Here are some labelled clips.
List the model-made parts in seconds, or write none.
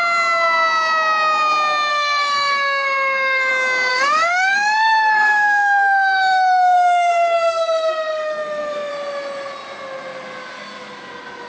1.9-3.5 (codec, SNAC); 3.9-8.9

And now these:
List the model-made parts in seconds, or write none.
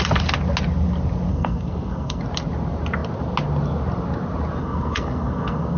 1.3-2.2 (codec, SNAC); 4.6-5.8